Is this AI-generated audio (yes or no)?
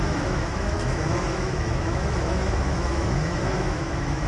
yes